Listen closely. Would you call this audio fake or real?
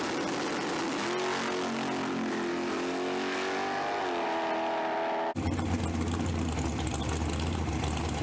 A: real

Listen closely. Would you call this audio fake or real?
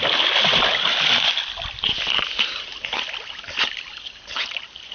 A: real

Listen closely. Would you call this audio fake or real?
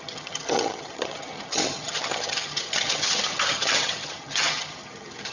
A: fake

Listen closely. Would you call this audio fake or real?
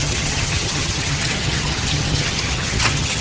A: fake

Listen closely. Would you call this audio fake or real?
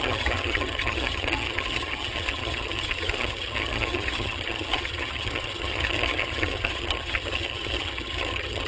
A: fake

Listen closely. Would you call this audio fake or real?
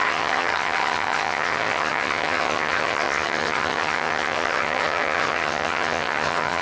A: fake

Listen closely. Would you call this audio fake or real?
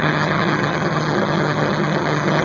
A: fake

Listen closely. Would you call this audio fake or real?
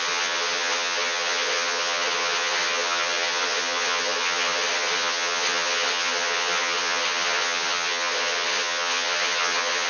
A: fake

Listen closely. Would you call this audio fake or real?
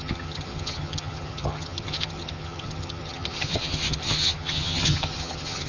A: fake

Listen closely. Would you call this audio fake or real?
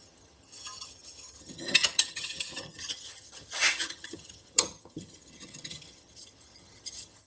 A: fake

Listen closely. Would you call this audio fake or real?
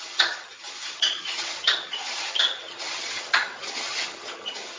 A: fake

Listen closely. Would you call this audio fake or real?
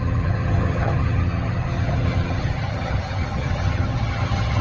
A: fake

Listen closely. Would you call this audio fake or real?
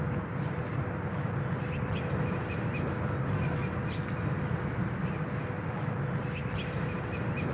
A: real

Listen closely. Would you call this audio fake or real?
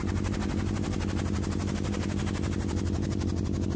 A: real